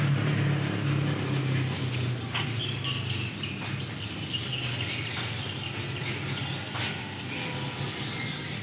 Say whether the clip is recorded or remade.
recorded